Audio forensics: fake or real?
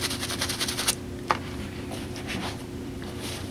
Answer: fake